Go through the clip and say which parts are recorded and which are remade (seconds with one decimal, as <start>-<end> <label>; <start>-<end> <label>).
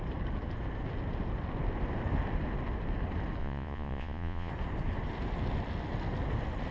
0.0-3.4 recorded; 3.4-4.5 remade; 4.5-6.7 recorded